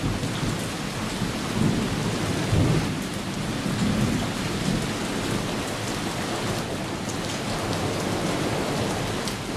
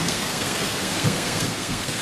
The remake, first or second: second